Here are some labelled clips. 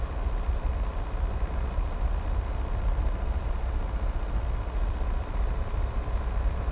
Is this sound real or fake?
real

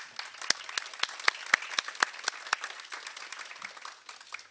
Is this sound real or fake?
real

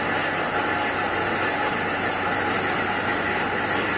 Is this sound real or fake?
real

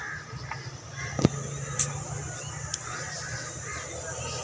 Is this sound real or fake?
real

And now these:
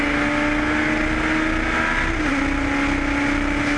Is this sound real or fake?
real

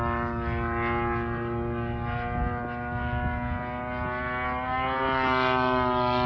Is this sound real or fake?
real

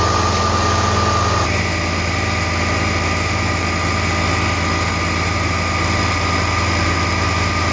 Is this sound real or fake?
real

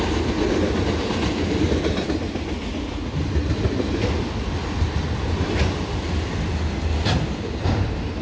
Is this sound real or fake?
real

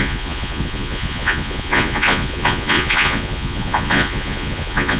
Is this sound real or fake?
fake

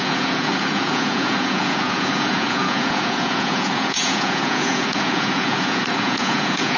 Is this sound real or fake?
fake